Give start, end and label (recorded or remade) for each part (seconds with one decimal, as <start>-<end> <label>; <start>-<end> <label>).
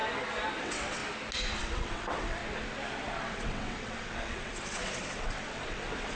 0.0-0.6 recorded; 0.6-1.0 remade; 1.0-1.6 recorded; 1.6-2.4 remade; 2.4-3.2 recorded; 3.2-6.2 remade